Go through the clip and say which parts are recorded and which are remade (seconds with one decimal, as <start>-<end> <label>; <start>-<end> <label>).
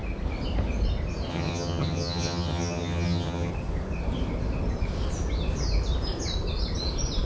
0.0-1.3 recorded; 1.3-3.5 remade; 3.5-7.3 recorded